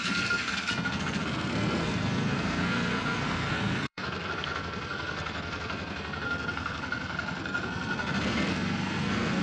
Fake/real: fake